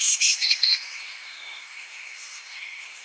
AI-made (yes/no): yes